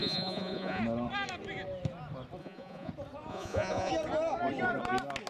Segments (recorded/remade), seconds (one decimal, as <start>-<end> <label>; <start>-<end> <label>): 0.0-0.8 remade; 0.8-2.4 recorded; 2.4-2.9 remade; 2.9-3.3 recorded; 3.3-3.9 remade; 3.9-5.3 recorded